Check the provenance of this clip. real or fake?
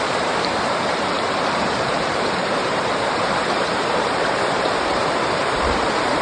fake